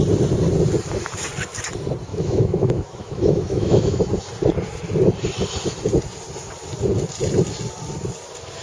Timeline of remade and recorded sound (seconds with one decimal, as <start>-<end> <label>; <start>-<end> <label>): 0.0-2.1 recorded; 2.1-4.0 remade; 4.0-8.6 recorded